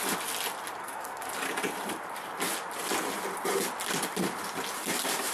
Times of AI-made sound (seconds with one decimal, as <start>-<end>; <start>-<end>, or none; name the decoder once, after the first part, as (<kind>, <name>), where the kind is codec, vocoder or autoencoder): 0.8-1.3 (codec, SNAC)